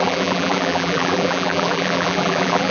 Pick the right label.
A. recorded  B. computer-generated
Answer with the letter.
B